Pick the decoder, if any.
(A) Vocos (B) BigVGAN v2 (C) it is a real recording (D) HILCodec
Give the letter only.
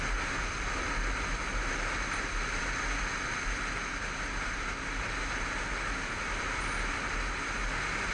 C